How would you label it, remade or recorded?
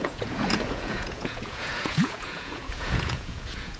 remade